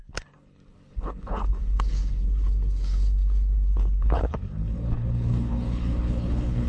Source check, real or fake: fake